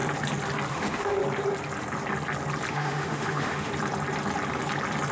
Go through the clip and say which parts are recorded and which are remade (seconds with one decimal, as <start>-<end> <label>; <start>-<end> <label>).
0.0-0.7 recorded; 0.7-1.2 remade; 1.2-2.7 recorded; 2.7-3.7 remade; 3.7-5.1 recorded